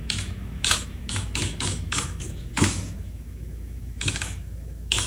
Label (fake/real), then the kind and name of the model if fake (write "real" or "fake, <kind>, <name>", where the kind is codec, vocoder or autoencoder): fake, autoencoder, DAC-VAE